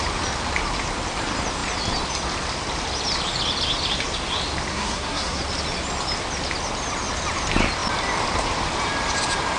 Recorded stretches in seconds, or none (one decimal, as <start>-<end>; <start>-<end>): 0.0-4.7; 5.4-9.6